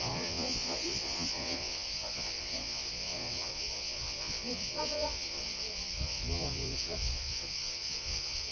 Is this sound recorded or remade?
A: remade